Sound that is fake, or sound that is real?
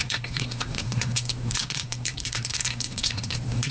fake